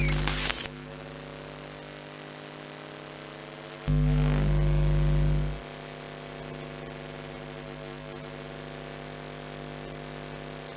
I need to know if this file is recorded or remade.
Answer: recorded